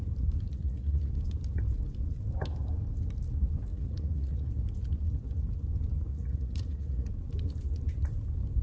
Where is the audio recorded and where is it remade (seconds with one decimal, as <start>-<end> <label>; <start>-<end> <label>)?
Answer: 0.0-0.5 recorded; 0.5-1.1 remade; 1.1-3.7 recorded; 3.7-4.5 remade; 4.5-6.1 recorded; 6.1-7.1 remade; 7.1-8.6 recorded